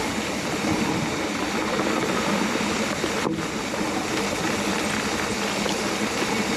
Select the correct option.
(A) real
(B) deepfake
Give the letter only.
A